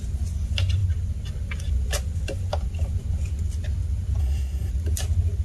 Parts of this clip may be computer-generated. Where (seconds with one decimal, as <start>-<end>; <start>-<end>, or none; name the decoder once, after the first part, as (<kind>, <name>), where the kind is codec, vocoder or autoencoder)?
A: 4.2-4.7 (codec, SNAC)